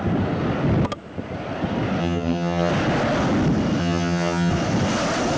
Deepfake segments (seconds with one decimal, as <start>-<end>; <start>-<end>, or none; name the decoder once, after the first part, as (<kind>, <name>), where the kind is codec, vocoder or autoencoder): 2.0-2.7 (vocoder, HiFi-GAN); 3.8-4.5